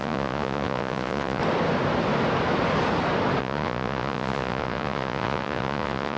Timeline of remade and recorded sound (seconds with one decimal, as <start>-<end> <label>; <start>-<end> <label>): 0.0-1.4 remade; 1.4-3.4 recorded; 3.4-6.2 remade